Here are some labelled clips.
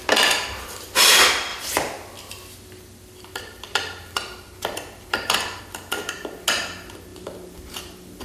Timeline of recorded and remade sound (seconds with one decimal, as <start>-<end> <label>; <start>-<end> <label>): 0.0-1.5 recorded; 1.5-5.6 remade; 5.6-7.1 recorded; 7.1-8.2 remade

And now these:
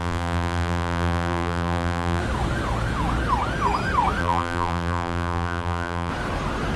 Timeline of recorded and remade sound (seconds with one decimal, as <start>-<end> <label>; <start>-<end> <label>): 0.0-2.2 remade; 2.2-4.2 recorded; 4.2-6.1 remade; 6.1-6.8 recorded

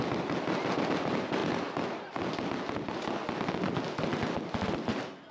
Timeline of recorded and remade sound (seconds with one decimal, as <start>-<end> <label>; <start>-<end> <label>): 0.0-5.3 recorded

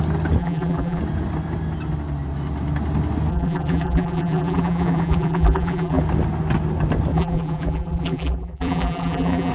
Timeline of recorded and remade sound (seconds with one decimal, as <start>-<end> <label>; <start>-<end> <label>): 0.0-0.4 recorded; 0.4-1.0 remade; 1.0-3.3 recorded; 3.3-6.0 remade; 6.0-7.1 recorded; 7.1-9.5 remade

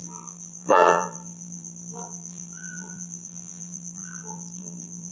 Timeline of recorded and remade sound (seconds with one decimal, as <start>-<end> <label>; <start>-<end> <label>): 0.0-5.1 remade

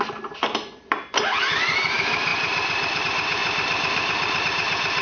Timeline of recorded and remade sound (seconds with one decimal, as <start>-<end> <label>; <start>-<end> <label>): 0.0-3.4 recorded; 3.4-4.4 remade; 4.4-5.0 recorded